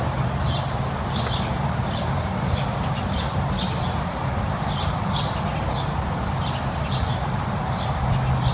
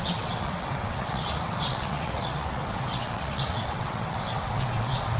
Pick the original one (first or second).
first